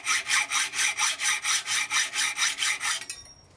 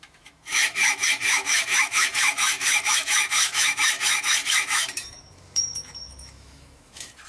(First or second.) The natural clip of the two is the first